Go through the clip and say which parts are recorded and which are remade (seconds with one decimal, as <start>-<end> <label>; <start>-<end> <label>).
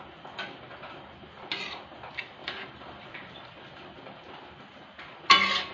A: 0.0-2.4 recorded; 2.4-4.3 remade; 4.3-5.7 recorded